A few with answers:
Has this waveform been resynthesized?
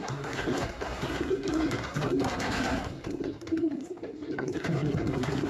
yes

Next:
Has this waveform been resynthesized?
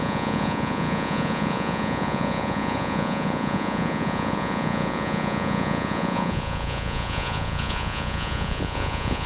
yes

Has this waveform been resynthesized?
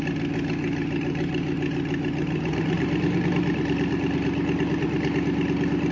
no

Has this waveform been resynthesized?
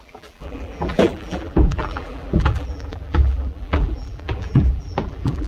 yes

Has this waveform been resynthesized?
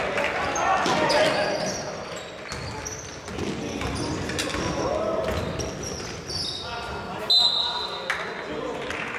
no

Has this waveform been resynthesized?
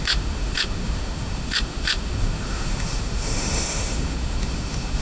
yes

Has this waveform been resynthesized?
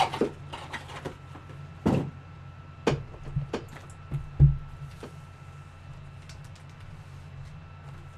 no